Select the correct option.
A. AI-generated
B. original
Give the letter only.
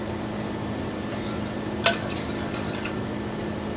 B